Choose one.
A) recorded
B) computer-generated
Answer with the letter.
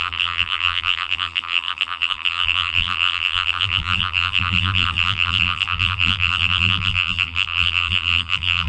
B